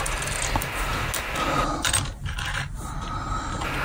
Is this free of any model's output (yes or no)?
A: yes